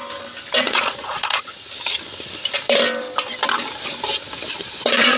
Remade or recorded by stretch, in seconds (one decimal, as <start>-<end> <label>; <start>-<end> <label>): 0.0-0.6 recorded; 0.6-1.5 remade; 1.5-4.5 recorded; 4.5-5.2 remade